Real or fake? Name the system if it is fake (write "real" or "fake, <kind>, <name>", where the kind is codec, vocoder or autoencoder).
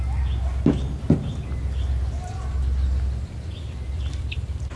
real